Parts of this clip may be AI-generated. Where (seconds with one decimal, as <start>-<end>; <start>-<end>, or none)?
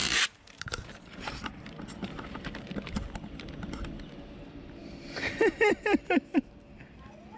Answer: 0.0-3.5